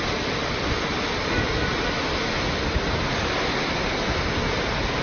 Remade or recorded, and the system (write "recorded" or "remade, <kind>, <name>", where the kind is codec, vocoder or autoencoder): recorded